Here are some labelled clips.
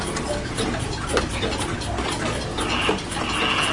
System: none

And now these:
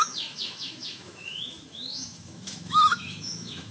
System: autoencoder, DAC-VAE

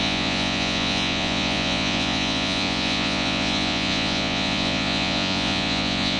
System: vocoder, Vocos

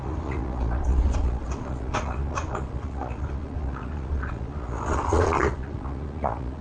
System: vocoder, Vocos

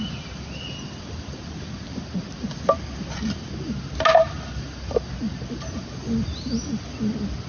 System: none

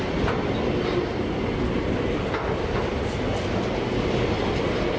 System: none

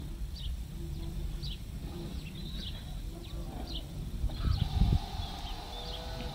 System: none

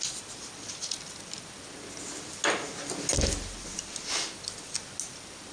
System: none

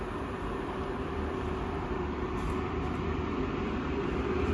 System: vocoder, BigVGAN v2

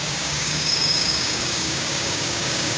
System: codec, DAC